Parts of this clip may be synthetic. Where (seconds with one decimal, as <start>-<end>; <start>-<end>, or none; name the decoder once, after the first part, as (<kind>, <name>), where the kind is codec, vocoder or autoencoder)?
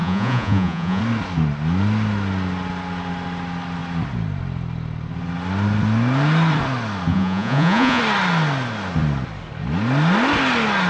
0.0-1.0 (vocoder, Vocos); 7.1-8.0